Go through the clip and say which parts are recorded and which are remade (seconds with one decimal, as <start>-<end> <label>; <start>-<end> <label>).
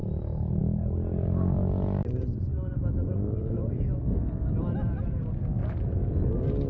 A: 0.0-0.6 remade; 0.6-5.6 recorded; 5.6-6.3 remade; 6.3-6.7 recorded